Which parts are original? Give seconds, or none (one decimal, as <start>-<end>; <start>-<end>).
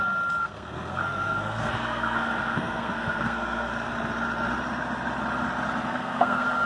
0.0-0.4; 3.9-5.9